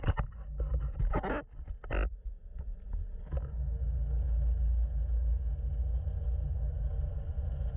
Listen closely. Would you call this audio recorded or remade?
recorded